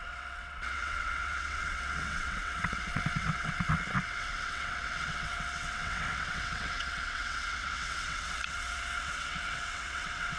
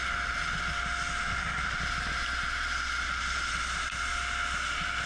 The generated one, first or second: first